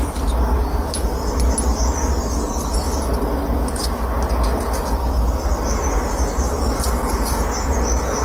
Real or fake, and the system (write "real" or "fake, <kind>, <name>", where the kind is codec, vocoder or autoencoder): real